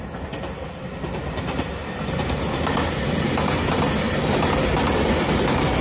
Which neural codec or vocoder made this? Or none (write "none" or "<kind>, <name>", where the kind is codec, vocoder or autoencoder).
none